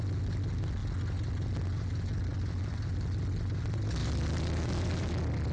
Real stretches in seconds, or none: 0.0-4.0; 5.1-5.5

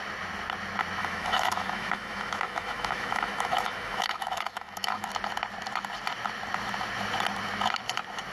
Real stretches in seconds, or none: 0.0-1.0; 5.1-8.3

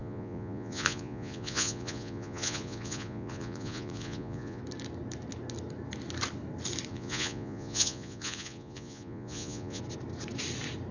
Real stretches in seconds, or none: 4.6-6.9; 9.8-10.9

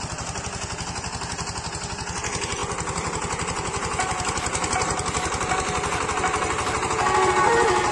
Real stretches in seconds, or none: 0.0-7.9